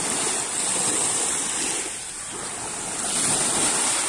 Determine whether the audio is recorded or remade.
recorded